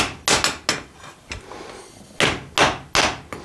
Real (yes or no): yes